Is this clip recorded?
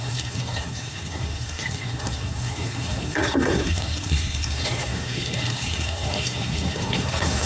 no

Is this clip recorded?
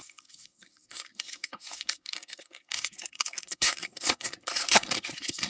no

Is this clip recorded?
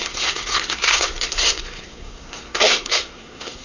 no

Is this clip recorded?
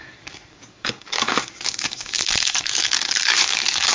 no